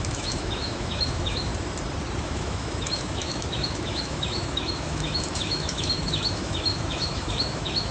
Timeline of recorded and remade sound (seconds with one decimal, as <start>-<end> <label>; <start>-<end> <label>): 0.0-1.5 remade; 1.5-2.2 recorded; 2.2-7.9 remade